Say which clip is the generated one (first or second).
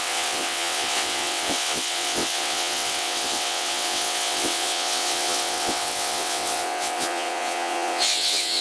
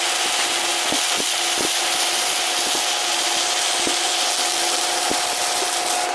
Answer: first